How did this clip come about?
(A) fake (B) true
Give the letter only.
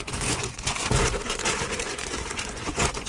A